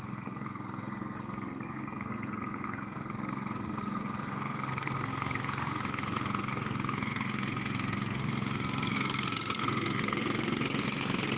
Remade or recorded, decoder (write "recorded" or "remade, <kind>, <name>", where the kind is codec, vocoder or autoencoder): remade, codec, SNAC